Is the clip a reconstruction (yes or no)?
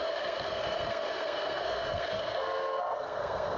yes